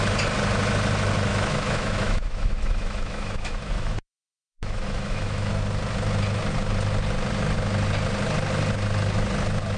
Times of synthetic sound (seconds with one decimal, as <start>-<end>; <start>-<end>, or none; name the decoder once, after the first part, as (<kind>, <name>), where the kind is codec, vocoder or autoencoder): 1.3-5.5 (autoencoder, DAC-VAE)